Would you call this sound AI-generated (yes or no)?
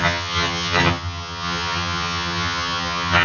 yes